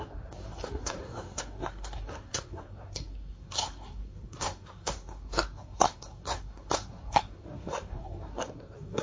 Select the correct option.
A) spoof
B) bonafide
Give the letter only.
A